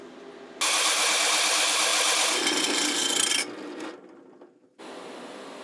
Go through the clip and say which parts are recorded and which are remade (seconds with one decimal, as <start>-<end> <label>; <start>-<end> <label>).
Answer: 0.0-5.6 recorded